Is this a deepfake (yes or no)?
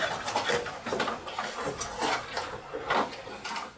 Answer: no